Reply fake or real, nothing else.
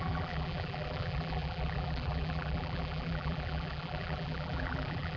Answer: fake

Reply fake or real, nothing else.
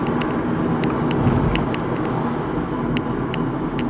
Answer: real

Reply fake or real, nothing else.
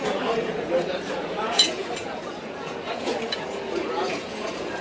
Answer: fake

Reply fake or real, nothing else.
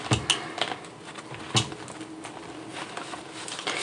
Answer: real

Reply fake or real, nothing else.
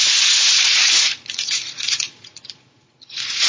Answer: fake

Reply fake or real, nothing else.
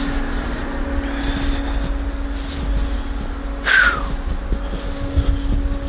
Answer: real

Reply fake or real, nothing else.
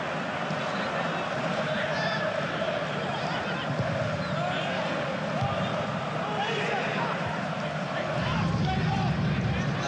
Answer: real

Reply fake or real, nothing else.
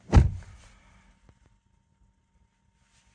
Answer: real